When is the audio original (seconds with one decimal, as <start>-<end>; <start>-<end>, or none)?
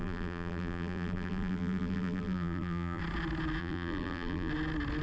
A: 3.0-3.6; 4.5-5.0